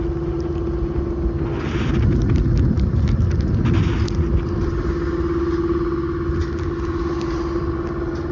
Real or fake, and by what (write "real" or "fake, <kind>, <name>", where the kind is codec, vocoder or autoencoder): real